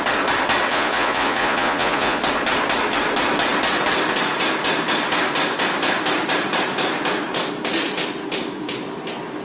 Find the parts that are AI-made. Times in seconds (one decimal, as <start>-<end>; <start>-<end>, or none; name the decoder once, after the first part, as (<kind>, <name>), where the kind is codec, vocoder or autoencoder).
0.7-2.2 (vocoder, Vocos)